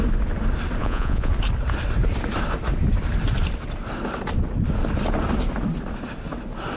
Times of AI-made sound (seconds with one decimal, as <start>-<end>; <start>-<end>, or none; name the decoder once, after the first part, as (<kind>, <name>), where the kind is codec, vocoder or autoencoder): 0.8-1.3 (vocoder, Vocos)